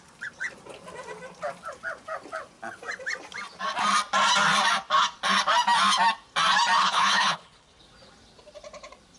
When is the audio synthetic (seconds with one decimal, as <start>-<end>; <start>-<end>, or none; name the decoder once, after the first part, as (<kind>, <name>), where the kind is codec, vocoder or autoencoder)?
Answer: 6.8-7.8 (codec, HILCodec)

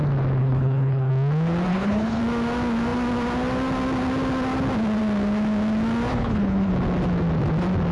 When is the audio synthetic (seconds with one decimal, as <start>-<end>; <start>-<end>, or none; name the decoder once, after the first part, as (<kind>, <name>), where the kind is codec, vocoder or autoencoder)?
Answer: 0.4-1.1 (codec, HILCodec); 1.7-2.2; 6.1-6.7

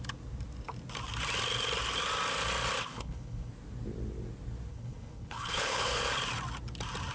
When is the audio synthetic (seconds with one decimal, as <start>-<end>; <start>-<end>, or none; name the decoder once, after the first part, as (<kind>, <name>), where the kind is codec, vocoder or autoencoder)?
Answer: 2.9-3.5 (codec, HILCodec); 4.7-6.0

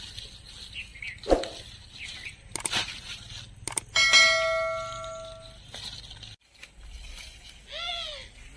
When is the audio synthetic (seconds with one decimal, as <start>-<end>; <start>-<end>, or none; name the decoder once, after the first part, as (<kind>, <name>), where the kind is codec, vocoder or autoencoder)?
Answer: none

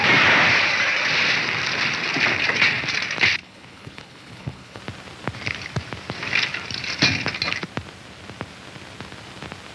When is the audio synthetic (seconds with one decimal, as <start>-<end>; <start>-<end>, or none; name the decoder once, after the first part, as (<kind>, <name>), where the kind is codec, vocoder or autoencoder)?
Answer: 3.4-4.8 (codec, HILCodec)